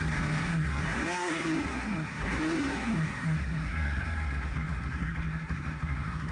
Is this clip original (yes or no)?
no